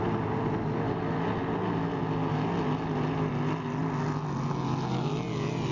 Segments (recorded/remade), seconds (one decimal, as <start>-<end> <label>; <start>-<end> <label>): 0.0-5.7 recorded